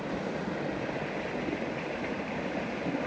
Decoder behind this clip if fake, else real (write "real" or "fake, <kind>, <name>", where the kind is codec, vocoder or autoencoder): real